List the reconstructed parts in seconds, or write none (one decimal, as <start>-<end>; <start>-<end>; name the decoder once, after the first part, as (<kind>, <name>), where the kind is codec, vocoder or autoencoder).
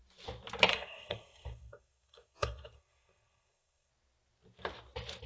0.7-3.9 (codec, SNAC)